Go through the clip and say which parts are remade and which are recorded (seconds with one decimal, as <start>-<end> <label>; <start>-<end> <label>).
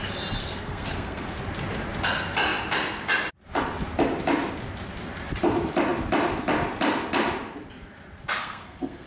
0.0-0.4 recorded; 0.4-1.4 remade; 1.4-8.4 recorded; 8.4-9.1 remade